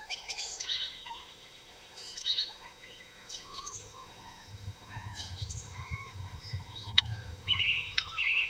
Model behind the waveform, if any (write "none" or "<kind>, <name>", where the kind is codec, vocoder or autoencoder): autoencoder, DAC-VAE